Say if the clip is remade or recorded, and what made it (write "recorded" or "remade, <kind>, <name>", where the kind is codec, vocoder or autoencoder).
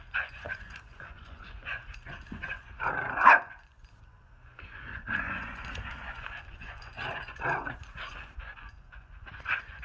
remade, vocoder, Vocos